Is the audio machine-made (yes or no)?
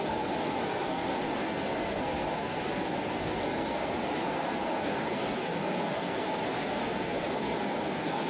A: yes